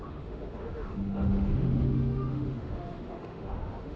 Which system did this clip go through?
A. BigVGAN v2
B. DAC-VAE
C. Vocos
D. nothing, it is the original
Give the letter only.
B